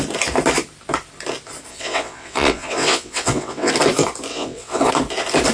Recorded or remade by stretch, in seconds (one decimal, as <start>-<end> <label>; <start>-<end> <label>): 0.0-1.7 recorded; 1.7-3.7 remade; 3.7-4.3 recorded; 4.3-4.9 remade; 4.9-5.5 recorded